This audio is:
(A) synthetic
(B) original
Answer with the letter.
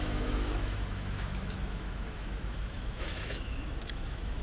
A